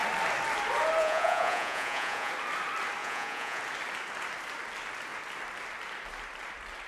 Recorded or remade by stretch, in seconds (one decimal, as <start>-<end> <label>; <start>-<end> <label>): 0.0-1.0 recorded; 1.0-2.3 remade; 2.3-3.0 recorded; 3.0-3.6 remade; 3.6-6.9 recorded